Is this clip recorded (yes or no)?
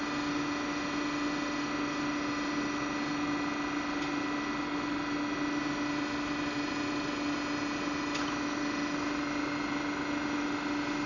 yes